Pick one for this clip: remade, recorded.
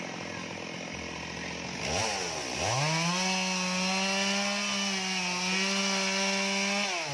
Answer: recorded